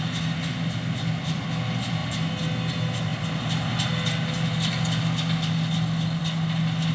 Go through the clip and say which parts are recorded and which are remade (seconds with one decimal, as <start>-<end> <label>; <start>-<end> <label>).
0.0-6.9 recorded